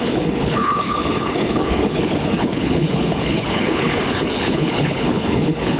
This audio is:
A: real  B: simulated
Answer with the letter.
B